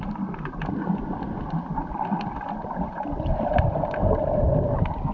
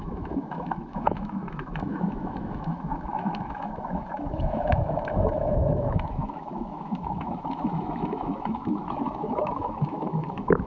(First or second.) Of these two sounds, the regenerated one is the second